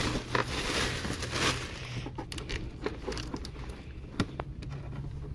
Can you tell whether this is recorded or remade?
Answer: recorded